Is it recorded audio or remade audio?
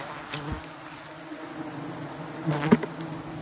recorded